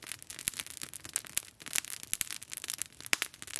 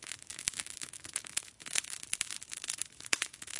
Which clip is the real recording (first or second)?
first